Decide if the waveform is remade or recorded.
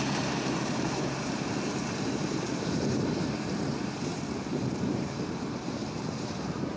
remade